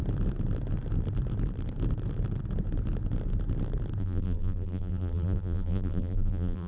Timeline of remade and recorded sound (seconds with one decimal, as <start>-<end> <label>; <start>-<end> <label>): 0.0-4.0 recorded; 4.0-6.7 remade